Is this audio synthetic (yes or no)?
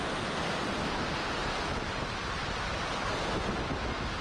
no